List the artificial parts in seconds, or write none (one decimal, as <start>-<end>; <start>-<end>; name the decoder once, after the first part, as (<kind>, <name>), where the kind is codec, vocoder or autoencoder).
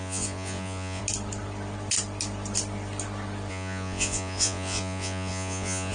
0.0-1.0 (vocoder, Vocos); 3.5-5.9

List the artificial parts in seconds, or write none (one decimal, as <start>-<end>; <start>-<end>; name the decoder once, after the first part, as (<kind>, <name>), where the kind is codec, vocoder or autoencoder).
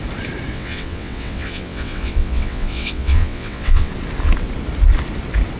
0.5-3.9 (vocoder, WaveNeXt)